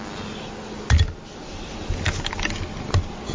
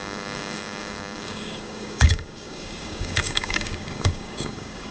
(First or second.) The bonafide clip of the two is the first